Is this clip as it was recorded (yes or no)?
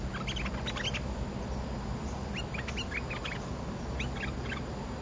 yes